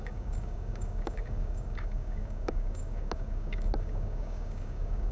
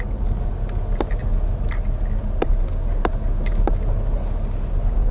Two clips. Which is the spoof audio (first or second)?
first